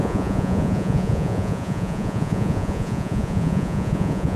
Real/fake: fake